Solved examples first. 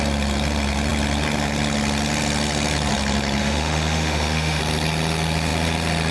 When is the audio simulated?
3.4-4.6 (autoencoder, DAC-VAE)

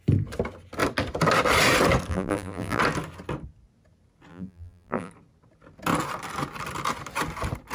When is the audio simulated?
2.1-2.8 (vocoder, BigVGAN v2); 4.3-5.1

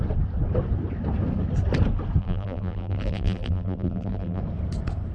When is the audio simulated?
2.2-4.4 (vocoder, BigVGAN v2)